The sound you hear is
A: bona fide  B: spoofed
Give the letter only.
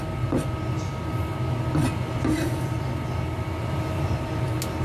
A